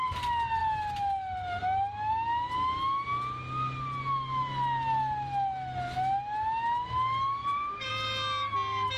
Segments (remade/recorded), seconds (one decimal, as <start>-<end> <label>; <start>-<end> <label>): 0.0-7.4 recorded; 7.4-7.9 remade; 7.9-9.0 recorded